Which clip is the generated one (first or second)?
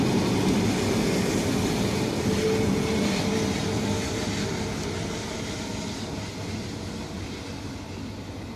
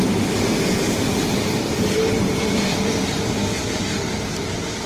second